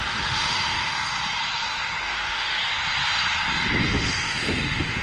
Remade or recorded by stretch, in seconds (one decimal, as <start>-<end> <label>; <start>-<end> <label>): 0.0-1.0 remade; 1.0-2.0 recorded; 2.0-2.6 remade; 2.6-3.8 recorded; 3.8-5.0 remade